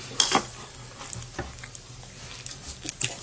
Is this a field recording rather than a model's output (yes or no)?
yes